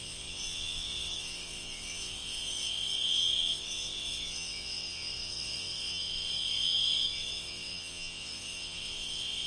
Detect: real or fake fake